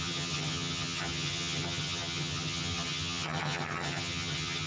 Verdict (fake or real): fake